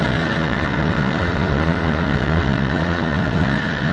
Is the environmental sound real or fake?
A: fake